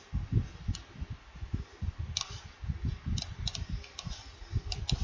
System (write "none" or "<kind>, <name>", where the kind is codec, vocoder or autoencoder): none